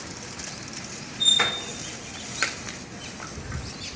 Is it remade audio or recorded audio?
recorded